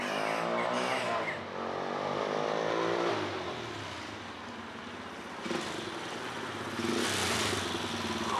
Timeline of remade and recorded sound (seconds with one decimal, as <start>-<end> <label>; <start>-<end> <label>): 0.0-8.4 recorded